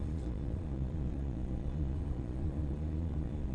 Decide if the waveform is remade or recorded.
remade